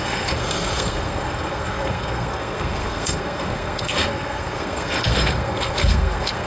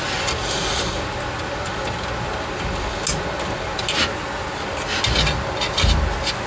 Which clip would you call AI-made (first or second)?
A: first